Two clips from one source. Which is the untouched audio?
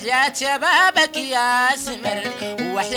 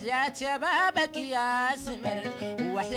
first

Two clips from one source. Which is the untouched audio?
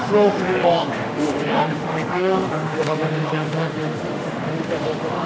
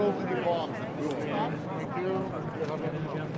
second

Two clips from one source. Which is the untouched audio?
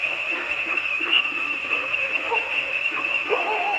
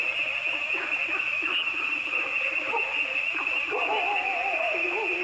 second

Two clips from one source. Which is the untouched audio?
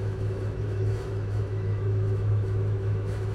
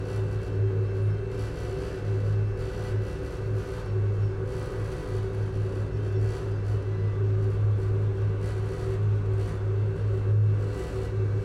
second